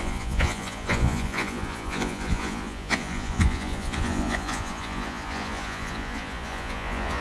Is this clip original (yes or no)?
no